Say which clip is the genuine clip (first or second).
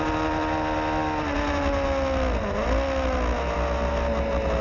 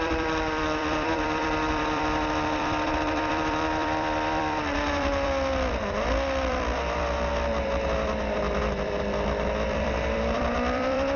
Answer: first